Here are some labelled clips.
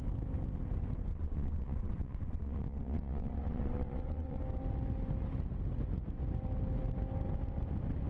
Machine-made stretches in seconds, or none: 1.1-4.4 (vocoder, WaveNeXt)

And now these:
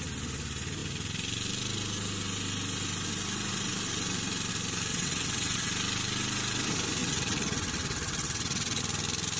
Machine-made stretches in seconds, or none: 4.9-5.7 (vocoder, WaveNeXt); 7.0-8.8

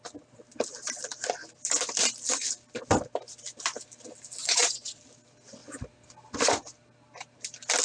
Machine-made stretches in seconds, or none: 4.4-5.0 (vocoder, WaveNeXt)

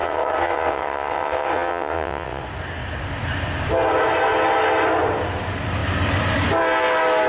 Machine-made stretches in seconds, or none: 0.0-2.4 (vocoder, WaveNeXt)

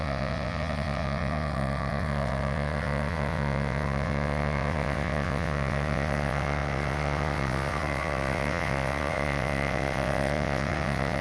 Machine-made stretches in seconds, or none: 0.0-11.2 (vocoder, WaveNeXt)

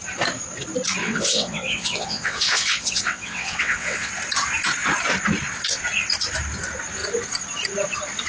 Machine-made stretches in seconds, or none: 1.0-4.1 (vocoder, WaveNeXt)

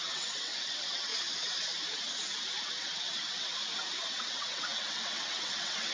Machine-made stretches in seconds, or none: 0.0-1.1 (vocoder, WaveNeXt); 2.6-3.6; 4.2-5.9

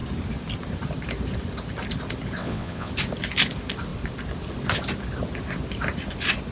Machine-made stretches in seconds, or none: 2.4-2.9 (vocoder, WaveNeXt)